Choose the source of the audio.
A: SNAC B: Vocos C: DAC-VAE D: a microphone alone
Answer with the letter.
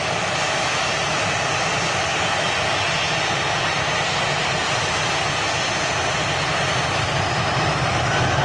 D